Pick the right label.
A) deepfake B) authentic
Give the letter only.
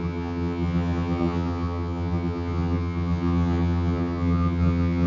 A